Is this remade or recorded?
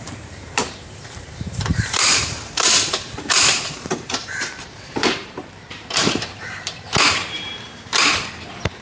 remade